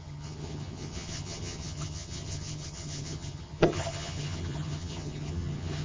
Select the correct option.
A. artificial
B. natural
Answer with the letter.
A